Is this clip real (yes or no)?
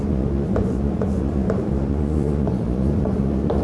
no